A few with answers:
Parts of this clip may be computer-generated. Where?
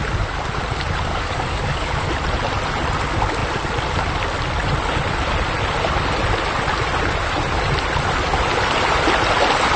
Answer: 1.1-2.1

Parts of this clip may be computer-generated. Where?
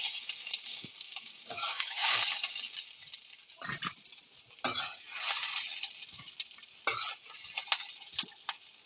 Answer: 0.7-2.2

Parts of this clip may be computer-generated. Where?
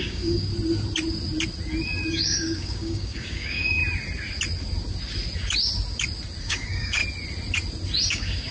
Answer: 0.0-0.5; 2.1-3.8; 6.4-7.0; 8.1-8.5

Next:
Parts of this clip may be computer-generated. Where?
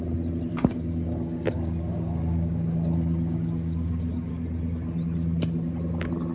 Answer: 0.5-4.3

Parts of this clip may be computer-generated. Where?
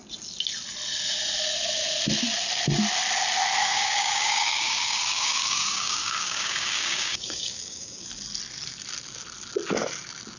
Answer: 3.6-8.0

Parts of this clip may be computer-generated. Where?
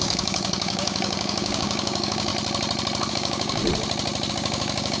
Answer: 0.0-2.3; 3.1-3.6; 4.3-5.0